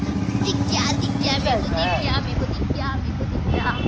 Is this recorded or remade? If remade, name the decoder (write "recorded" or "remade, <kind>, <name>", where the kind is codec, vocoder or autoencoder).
recorded